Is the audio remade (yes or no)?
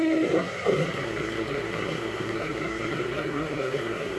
yes